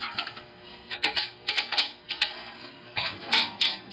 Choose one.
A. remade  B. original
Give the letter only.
A